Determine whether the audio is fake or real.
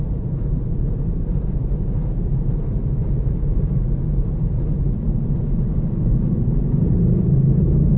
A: fake